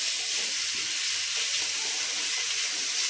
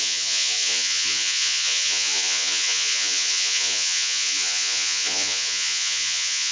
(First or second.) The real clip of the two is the first